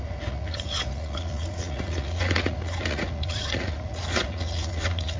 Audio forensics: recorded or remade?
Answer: remade